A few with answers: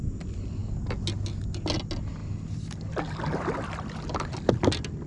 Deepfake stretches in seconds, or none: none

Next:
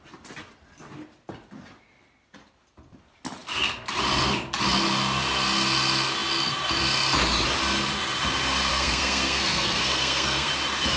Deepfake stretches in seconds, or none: 8.7-10.5 (codec, SNAC)

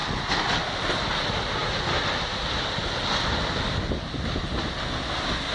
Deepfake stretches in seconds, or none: none

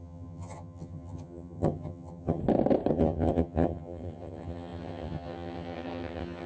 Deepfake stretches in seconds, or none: 0.0-2.4 (vocoder, HiFi-GAN); 2.9-6.5

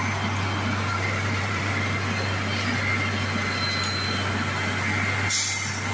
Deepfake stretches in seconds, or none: 0.9-1.7 (vocoder, BigVGAN v2)

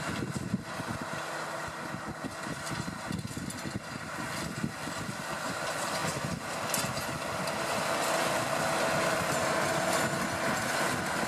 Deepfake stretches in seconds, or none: none